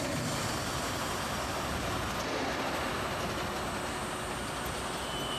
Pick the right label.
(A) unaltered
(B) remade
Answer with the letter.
A